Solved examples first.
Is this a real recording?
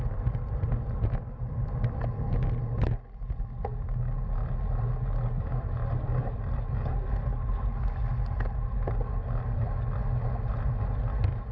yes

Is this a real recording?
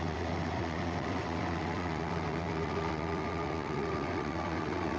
no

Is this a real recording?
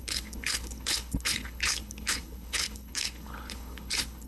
no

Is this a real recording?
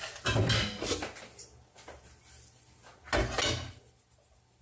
yes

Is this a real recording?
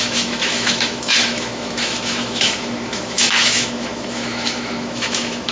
no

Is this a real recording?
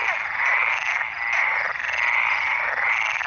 yes